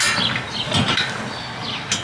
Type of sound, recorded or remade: recorded